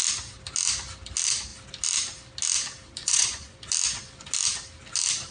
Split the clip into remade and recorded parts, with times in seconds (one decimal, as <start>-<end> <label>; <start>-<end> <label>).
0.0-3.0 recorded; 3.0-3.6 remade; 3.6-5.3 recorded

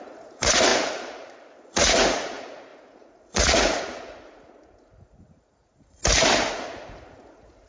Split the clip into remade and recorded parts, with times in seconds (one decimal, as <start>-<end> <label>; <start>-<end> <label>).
0.0-6.0 remade; 6.0-6.5 recorded; 6.5-7.7 remade

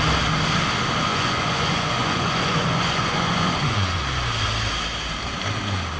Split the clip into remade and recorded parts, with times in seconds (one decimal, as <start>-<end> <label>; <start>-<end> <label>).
0.0-1.1 recorded; 1.1-4.0 remade; 4.0-6.0 recorded

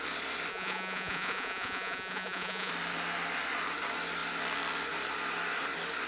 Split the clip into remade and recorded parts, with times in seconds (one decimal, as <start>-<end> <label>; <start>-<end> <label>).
0.0-0.5 recorded; 0.5-2.7 remade; 2.7-6.1 recorded